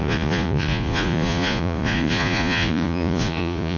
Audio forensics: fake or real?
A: fake